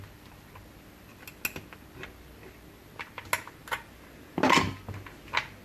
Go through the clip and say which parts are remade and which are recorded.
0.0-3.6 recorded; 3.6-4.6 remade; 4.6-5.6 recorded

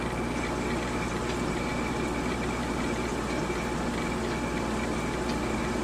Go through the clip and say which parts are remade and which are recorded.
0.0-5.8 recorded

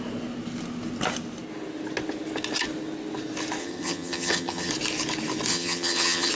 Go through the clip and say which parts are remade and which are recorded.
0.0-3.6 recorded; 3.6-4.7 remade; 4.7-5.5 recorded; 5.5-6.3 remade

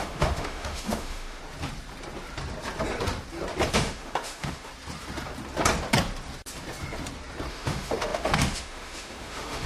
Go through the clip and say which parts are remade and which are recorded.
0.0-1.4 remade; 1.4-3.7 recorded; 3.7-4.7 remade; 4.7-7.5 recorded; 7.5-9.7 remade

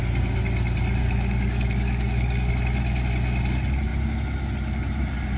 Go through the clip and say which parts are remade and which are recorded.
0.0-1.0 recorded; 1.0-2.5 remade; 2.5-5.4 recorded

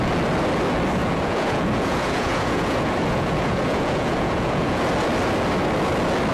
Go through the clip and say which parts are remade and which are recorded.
0.0-1.0 recorded; 1.0-4.8 remade; 4.8-6.3 recorded

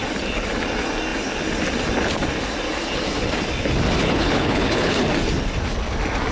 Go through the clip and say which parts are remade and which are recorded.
0.0-4.0 recorded; 4.0-5.0 remade; 5.0-6.3 recorded

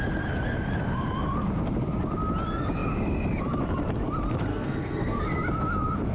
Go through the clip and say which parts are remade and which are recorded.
0.0-4.5 recorded; 4.5-5.2 remade; 5.2-6.1 recorded